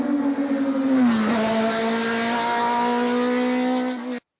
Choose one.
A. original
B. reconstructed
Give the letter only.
A